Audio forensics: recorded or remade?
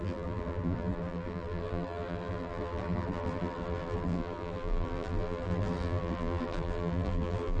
remade